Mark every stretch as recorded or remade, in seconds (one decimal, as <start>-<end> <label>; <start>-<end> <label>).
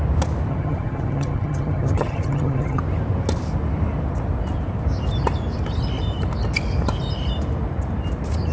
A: 0.0-0.5 recorded; 0.5-2.8 remade; 2.8-8.5 recorded